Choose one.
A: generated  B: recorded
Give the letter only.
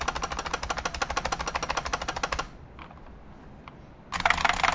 B